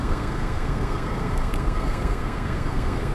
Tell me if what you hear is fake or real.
fake